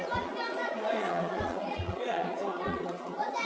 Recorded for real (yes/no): no